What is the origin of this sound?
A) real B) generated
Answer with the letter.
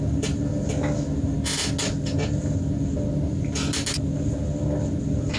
A